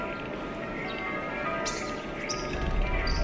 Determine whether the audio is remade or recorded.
recorded